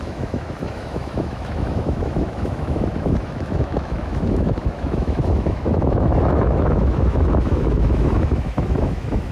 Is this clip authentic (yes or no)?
no